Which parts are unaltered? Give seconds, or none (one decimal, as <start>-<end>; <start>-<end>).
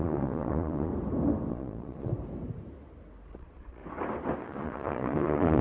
0.9-1.5; 2.1-3.3; 3.8-4.4